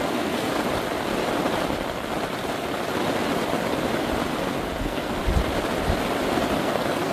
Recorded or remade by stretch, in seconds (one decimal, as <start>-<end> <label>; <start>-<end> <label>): 0.0-0.5 remade; 0.5-4.8 recorded; 4.8-5.2 remade; 5.2-6.6 recorded; 6.6-7.1 remade